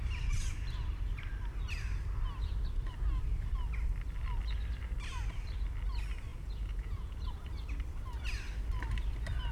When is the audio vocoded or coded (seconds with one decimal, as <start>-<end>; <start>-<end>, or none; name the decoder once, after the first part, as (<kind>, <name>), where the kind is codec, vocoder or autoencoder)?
6.3-7.3 (vocoder, Vocos)